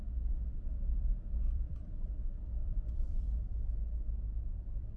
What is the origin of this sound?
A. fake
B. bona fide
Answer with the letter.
A